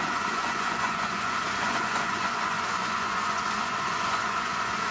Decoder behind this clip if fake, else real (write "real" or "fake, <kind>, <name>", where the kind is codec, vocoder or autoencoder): fake, vocoder, Vocos